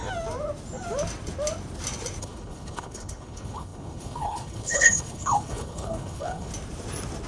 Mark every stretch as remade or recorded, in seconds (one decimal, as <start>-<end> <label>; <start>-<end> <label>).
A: 0.0-2.2 recorded; 2.2-6.5 remade; 6.5-7.3 recorded